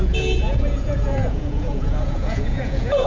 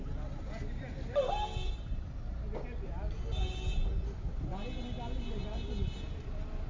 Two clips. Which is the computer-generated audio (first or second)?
first